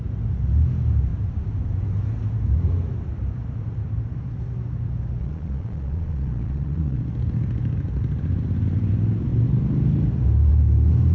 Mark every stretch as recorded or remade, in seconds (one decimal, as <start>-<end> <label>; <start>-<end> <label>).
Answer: 0.0-5.2 recorded; 5.2-7.0 remade; 7.0-11.1 recorded